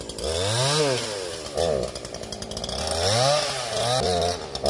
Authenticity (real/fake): real